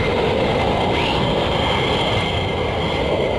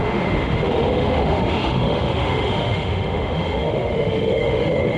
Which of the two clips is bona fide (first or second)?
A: first